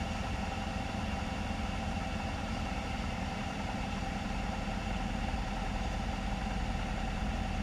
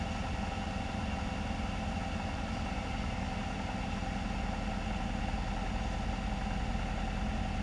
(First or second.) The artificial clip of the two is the first